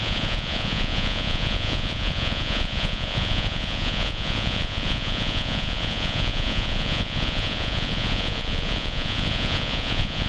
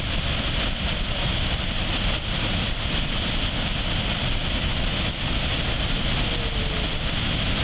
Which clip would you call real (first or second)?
second